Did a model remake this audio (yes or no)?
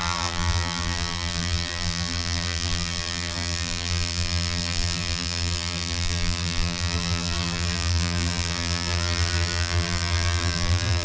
yes